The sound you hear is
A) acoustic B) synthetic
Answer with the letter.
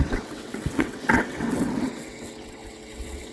B